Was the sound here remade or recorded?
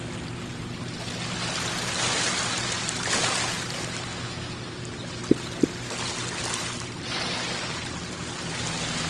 recorded